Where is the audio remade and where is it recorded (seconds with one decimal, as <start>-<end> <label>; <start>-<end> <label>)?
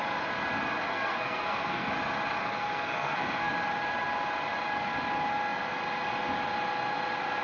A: 0.0-0.9 recorded; 0.9-1.9 remade; 1.9-2.4 recorded; 2.4-3.5 remade; 3.5-7.4 recorded